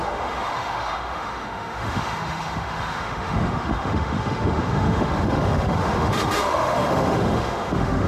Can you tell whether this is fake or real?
fake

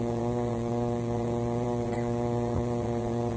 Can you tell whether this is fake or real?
fake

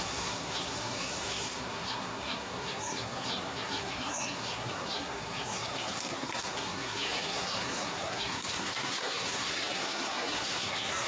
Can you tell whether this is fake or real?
fake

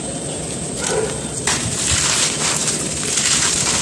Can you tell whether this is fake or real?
real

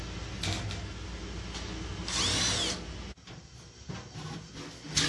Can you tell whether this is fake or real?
real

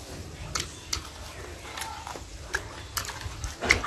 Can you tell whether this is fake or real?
real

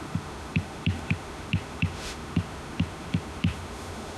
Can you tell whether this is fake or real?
fake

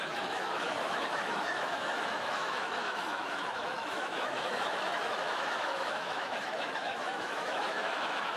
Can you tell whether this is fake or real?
fake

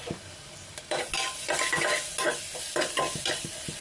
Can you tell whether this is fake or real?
real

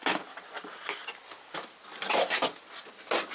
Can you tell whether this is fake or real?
real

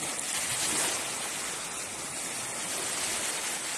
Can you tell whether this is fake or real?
real